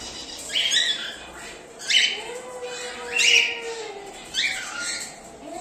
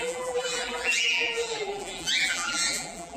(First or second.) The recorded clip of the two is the first